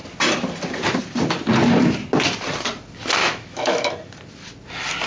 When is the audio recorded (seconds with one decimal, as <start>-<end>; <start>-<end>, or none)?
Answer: 0.0-3.2; 3.9-5.1